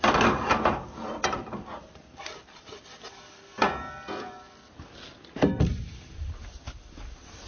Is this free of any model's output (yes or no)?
yes